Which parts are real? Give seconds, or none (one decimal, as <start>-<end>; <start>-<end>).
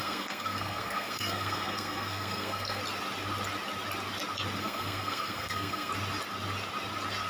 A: 2.8-4.6; 5.9-7.3